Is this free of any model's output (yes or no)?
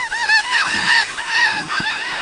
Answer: no